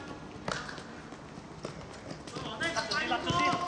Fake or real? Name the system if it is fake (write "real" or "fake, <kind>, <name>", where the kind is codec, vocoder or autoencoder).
real